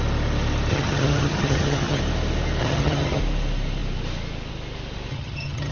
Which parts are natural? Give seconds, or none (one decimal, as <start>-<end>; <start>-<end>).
0.0-0.7; 2.0-2.6; 3.2-5.1